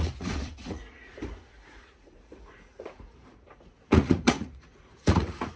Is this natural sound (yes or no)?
no